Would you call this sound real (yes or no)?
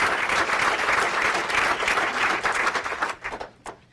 yes